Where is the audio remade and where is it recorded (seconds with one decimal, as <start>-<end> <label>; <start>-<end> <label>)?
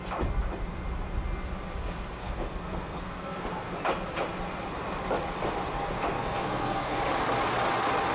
0.0-2.2 recorded; 2.2-3.7 remade; 3.7-6.2 recorded; 6.2-7.0 remade; 7.0-8.1 recorded